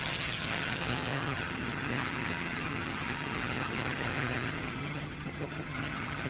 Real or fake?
fake